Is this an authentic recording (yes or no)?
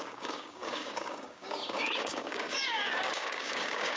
no